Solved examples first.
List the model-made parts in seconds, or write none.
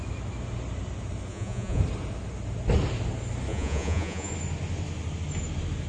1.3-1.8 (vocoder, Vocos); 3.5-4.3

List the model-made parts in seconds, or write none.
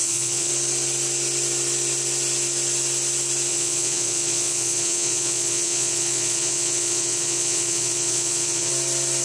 0.0-0.5 (vocoder, Vocos); 3.5-8.7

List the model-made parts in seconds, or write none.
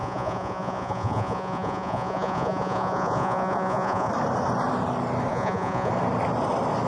0.0-4.1 (vocoder, Vocos); 5.3-5.9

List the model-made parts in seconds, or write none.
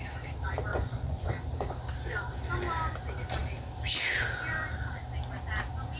0.7-1.3 (vocoder, Vocos)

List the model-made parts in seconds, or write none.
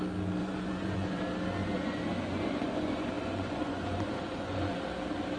0.4-1.2 (vocoder, Vocos); 1.6-4.8